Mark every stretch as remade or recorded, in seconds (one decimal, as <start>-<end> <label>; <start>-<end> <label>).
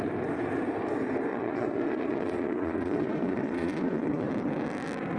0.0-1.3 recorded; 1.3-4.3 remade; 4.3-5.2 recorded